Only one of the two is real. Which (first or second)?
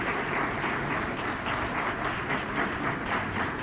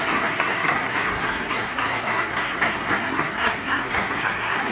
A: first